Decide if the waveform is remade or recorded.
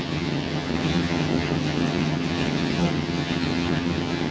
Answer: remade